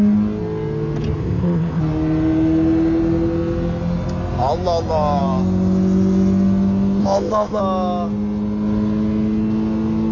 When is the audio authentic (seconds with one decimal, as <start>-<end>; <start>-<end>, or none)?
0.0-1.2; 1.8-7.0; 7.6-10.1